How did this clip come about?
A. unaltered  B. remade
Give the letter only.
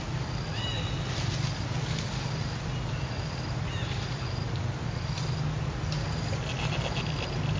A